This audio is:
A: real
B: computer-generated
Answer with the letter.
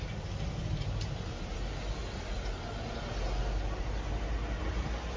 A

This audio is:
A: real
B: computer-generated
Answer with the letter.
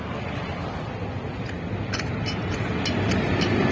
A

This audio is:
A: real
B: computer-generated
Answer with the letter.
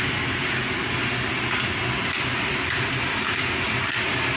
A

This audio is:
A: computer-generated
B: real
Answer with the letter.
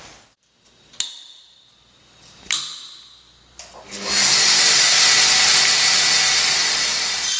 B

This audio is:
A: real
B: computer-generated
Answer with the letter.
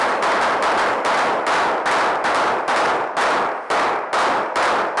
A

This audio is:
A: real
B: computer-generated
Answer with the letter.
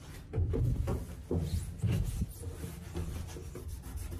A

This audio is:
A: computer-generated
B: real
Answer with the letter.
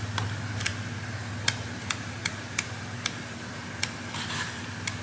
B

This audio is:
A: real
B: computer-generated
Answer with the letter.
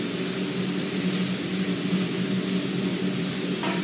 A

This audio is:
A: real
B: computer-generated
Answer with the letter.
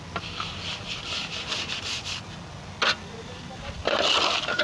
A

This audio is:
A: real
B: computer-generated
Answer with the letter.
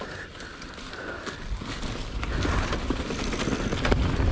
A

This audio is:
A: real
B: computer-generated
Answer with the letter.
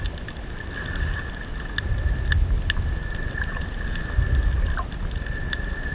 A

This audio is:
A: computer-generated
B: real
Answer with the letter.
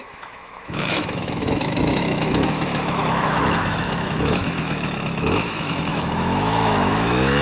A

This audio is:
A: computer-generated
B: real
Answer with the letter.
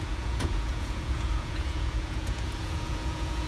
A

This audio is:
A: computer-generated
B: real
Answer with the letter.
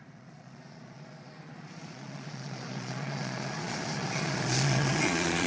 A